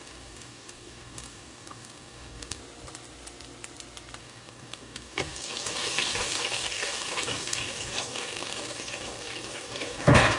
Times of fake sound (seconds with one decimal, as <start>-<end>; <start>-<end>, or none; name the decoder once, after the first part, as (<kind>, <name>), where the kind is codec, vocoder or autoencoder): 0.0-2.6 (codec, DAC); 4.2-10.4